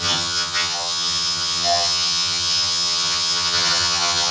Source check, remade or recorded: remade